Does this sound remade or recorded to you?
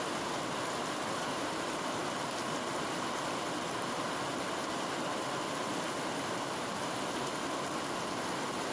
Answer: recorded